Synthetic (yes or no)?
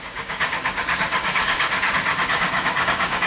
yes